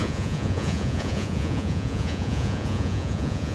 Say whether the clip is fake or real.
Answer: fake